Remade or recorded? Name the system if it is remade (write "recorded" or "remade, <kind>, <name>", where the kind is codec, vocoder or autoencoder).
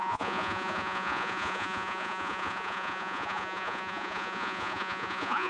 remade, vocoder, Vocos